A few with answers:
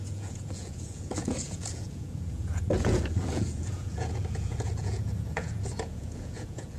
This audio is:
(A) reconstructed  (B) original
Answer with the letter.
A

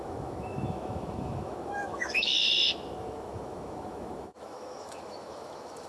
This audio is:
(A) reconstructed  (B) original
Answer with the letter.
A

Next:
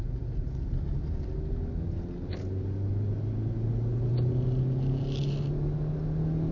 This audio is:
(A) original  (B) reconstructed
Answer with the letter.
A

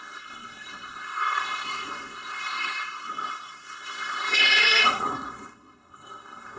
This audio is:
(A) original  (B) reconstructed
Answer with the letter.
B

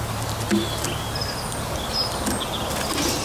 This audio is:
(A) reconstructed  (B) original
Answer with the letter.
B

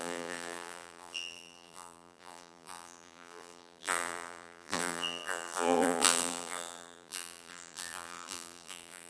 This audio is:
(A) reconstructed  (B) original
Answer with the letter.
A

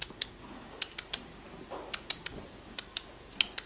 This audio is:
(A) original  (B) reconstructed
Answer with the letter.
A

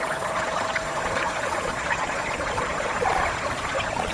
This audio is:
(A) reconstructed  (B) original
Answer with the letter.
A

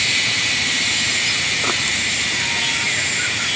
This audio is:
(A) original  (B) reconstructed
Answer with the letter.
A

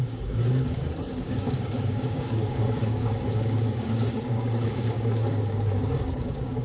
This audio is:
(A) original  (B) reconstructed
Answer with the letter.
B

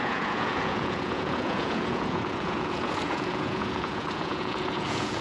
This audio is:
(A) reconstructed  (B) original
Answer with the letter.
A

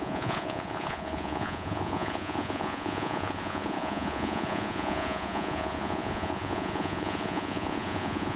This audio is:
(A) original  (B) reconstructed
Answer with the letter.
B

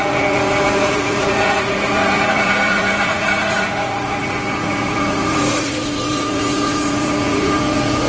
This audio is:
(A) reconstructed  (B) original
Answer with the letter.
A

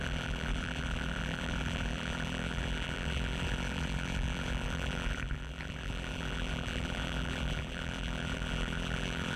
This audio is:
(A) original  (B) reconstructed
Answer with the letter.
B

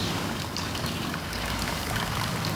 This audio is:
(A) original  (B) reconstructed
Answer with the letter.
B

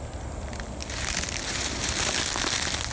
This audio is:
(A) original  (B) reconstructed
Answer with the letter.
A